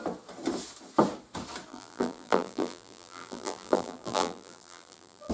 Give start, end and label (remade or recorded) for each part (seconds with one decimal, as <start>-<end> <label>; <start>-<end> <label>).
0.0-1.7 recorded; 1.7-5.3 remade